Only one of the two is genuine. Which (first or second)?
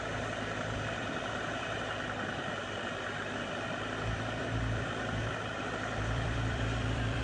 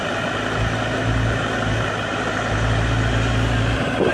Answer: second